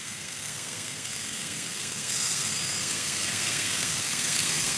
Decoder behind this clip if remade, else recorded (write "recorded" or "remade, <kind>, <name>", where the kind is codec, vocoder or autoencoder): remade, codec, SNAC